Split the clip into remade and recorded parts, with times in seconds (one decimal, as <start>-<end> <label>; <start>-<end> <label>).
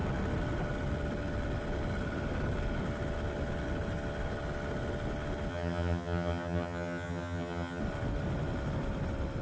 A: 0.0-5.5 recorded; 5.5-7.8 remade; 7.8-9.4 recorded